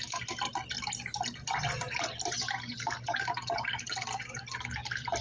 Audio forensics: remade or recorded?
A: recorded